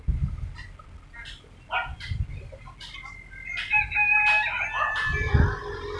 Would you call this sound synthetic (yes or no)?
no